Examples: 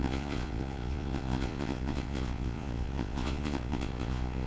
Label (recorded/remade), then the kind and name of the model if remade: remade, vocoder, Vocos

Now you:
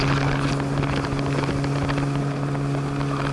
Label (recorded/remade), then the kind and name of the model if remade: recorded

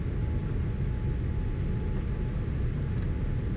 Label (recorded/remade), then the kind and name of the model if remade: recorded